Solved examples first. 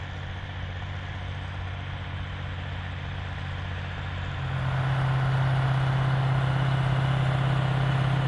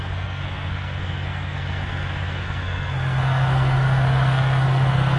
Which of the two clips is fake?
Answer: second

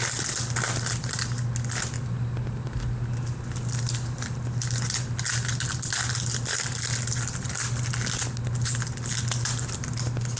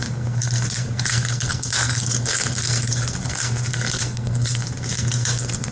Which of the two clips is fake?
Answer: second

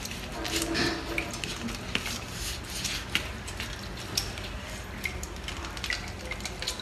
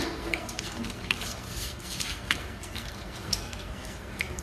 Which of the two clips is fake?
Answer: second